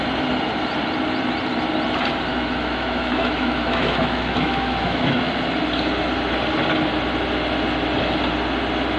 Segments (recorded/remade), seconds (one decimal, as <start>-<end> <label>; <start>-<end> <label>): 0.0-2.3 recorded; 2.3-5.3 remade; 5.3-9.0 recorded